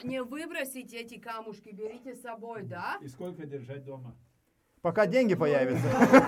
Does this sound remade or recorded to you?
recorded